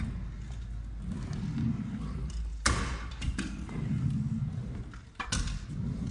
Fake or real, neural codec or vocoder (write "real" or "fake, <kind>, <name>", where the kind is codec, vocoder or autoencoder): real